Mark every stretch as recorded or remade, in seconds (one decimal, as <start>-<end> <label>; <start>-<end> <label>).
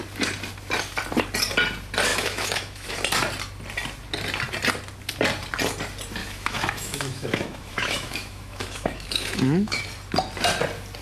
0.0-2.1 recorded; 2.1-2.9 remade; 2.9-6.2 recorded; 6.2-9.8 remade; 9.8-11.0 recorded